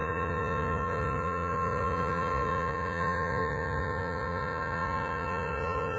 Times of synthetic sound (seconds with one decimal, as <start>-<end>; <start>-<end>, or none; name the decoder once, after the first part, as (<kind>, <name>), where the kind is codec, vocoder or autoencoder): 0.0-6.0 (vocoder, Vocos)